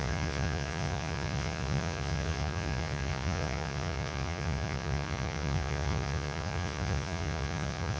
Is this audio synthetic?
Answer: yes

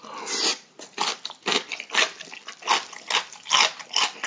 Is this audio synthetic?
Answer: no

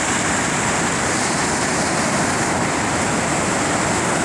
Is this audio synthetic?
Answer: no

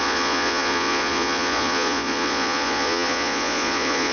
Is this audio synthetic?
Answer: yes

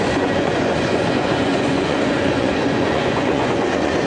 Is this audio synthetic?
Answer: yes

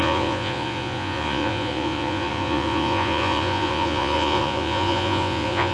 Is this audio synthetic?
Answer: yes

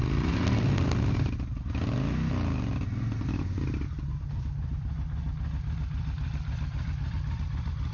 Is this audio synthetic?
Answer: no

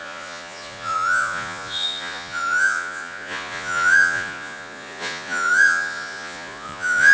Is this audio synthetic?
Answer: yes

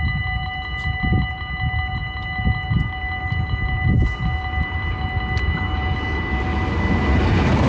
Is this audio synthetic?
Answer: no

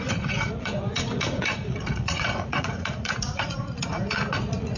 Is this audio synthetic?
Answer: yes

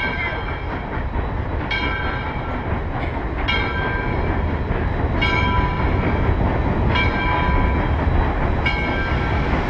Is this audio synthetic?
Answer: no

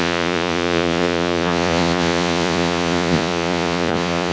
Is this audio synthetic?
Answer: yes